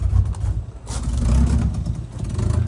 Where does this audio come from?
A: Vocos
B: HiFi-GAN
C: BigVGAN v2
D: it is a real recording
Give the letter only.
D